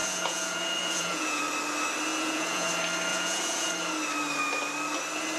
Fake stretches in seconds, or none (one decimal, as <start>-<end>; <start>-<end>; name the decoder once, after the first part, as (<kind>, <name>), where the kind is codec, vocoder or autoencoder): 0.0-1.4 (vocoder, Vocos); 2.1-2.7; 3.1-3.7